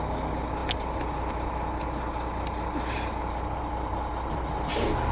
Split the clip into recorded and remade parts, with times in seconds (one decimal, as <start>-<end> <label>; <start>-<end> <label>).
0.0-5.1 recorded